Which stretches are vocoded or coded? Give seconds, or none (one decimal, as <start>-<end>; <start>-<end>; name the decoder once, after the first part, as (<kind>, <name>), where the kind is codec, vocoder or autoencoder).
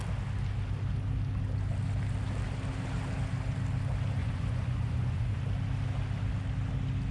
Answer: 4.2-5.4 (vocoder, Vocos)